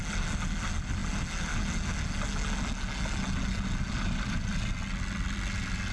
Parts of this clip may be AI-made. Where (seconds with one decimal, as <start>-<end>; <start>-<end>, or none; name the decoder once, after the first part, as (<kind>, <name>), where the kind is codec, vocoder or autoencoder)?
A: none